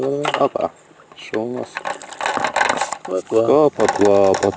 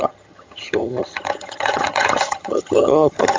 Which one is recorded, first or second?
first